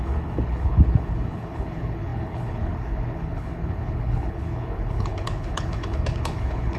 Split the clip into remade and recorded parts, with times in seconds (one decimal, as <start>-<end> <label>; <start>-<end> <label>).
0.0-6.8 remade